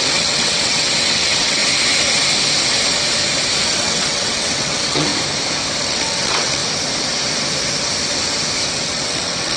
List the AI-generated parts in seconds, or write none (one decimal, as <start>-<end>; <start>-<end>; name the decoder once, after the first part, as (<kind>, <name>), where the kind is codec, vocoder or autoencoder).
0.0-1.6 (vocoder, WaveNeXt); 3.6-5.1; 5.8-6.6; 8.7-9.6